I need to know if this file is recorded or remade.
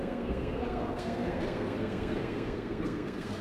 remade